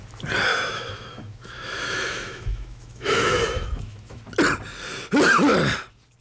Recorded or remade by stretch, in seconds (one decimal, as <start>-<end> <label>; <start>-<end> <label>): 0.0-0.5 recorded; 0.5-4.2 remade; 4.2-6.2 recorded